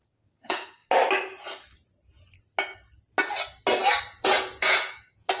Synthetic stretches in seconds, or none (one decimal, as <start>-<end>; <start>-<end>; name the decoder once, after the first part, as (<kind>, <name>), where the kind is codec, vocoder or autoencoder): 0.0-0.8 (vocoder, Vocos); 4.0-5.4